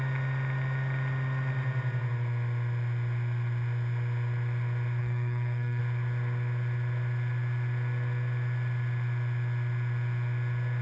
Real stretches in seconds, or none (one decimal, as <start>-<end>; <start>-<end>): 0.0-5.0; 5.8-10.8